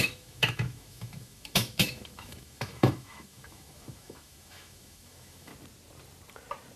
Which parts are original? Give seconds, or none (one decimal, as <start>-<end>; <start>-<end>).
5.5-6.8